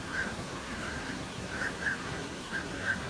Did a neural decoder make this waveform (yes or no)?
yes